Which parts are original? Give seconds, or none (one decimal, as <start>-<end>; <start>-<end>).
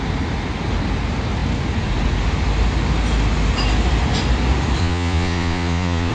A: 0.0-4.8